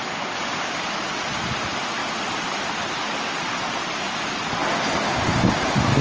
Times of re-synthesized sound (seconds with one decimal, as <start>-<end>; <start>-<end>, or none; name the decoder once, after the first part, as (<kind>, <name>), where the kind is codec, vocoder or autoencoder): 2.0-3.8 (vocoder, BigVGAN v2)